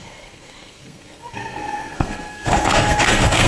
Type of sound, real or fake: fake